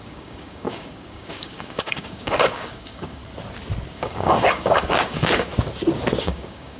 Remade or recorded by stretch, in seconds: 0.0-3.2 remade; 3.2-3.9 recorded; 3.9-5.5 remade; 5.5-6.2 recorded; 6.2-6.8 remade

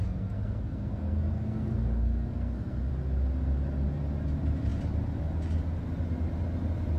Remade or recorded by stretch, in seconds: 0.0-2.9 remade; 2.9-7.0 recorded